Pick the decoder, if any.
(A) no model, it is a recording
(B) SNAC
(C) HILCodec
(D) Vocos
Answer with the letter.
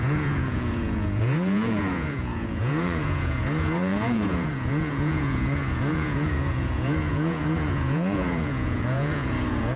D